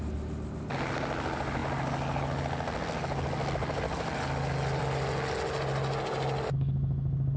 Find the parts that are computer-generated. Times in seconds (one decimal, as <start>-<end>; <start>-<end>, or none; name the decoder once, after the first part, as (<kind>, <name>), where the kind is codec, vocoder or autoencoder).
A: none